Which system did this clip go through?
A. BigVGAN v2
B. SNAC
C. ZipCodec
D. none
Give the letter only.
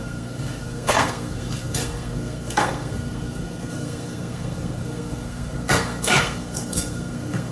B